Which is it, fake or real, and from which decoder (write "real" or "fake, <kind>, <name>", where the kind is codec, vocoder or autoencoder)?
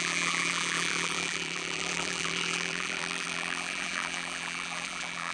fake, vocoder, BigVGAN v2